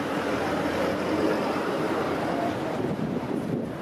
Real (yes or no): no